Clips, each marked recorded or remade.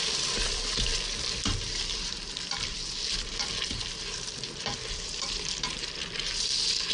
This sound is remade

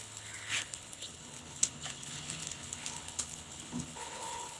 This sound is remade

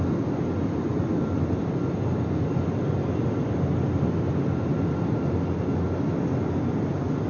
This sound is recorded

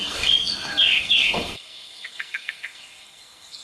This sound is remade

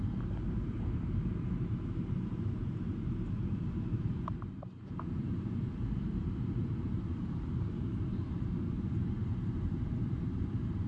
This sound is remade